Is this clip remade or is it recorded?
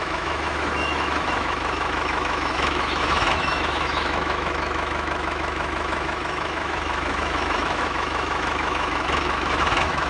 remade